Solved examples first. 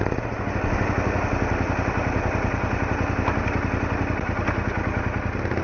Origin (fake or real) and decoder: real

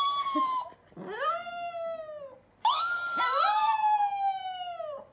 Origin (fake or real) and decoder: real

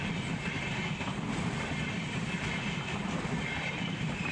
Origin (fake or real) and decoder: fake, vocoder, BigVGAN v2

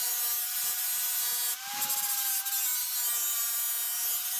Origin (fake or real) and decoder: real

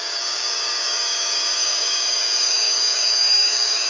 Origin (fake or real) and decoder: fake, codec, DAC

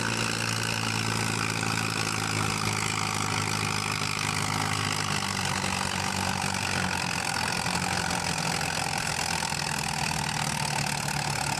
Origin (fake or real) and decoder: real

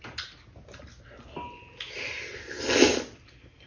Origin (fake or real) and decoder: real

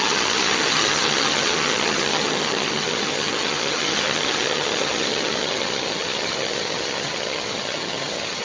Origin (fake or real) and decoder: fake, vocoder, HiFi-GAN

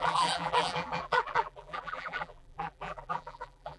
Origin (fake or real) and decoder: fake, vocoder, BigVGAN v2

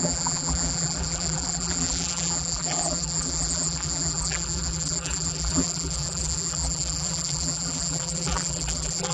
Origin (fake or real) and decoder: fake, vocoder, BigVGAN v2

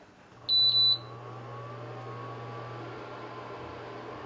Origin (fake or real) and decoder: real